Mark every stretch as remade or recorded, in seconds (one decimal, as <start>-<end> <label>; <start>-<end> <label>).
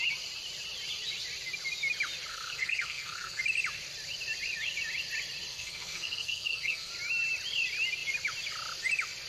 0.0-2.3 recorded; 2.3-3.4 remade; 3.4-5.5 recorded; 5.5-6.9 remade; 6.9-9.3 recorded